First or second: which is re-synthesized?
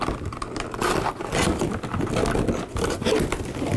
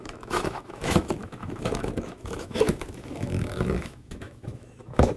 second